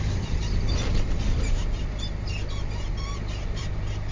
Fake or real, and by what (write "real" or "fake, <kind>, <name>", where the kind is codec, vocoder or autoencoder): fake, vocoder, BigVGAN v2